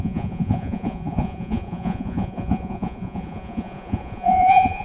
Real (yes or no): no